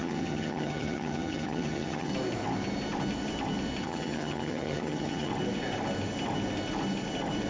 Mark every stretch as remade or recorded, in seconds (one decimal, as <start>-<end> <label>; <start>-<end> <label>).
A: 0.0-2.1 remade; 2.1-3.8 recorded; 3.8-5.3 remade; 5.3-7.5 recorded